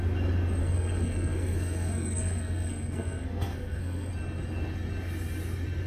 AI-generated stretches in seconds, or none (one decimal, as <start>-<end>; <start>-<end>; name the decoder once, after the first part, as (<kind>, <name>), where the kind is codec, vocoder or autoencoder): 0.6-4.1 (codec, SNAC)